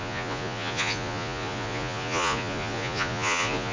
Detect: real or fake fake